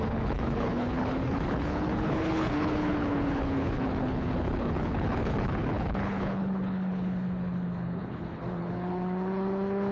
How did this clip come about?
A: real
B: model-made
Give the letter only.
B